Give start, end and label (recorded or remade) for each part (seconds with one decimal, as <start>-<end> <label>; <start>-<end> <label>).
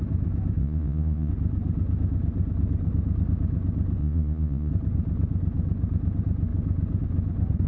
0.0-0.6 recorded; 0.6-1.3 remade; 1.3-4.0 recorded; 4.0-4.7 remade; 4.7-7.7 recorded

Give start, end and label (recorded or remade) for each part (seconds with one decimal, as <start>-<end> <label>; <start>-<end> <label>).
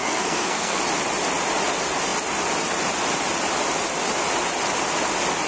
0.0-0.8 remade; 0.8-5.5 recorded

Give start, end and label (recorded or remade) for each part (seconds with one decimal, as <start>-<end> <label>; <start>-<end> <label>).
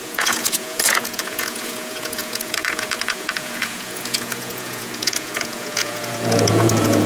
0.0-7.1 remade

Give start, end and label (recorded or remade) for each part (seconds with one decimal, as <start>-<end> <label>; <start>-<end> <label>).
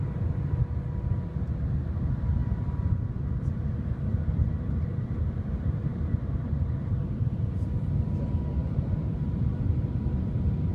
0.0-4.9 recorded; 4.9-7.3 remade; 7.3-8.6 recorded; 8.6-9.5 remade; 9.5-10.7 recorded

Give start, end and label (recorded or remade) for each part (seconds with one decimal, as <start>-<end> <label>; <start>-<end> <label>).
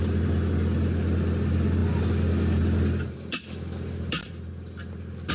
0.0-5.3 recorded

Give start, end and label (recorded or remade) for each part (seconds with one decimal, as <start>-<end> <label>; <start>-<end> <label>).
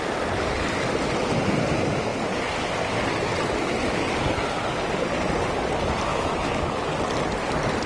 0.0-6.1 recorded; 6.1-6.7 remade; 6.7-7.9 recorded